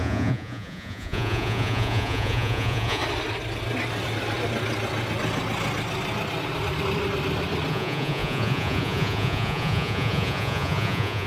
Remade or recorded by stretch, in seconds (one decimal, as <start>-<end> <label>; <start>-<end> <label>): 0.0-3.0 remade; 3.0-7.7 recorded; 7.7-11.3 remade